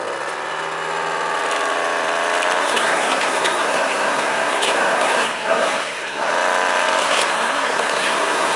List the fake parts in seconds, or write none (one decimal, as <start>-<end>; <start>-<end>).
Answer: 2.6-6.3; 7.0-8.6